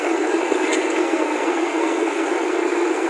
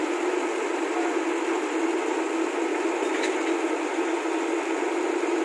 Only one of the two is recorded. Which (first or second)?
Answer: second